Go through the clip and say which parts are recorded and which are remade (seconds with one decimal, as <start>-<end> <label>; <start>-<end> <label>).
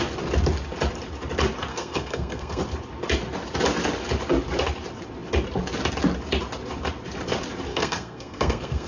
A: 0.0-1.7 recorded; 1.7-2.6 remade; 2.6-7.7 recorded; 7.7-8.9 remade